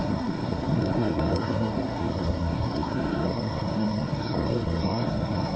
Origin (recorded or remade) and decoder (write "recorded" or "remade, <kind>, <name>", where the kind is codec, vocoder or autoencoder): remade, codec, SNAC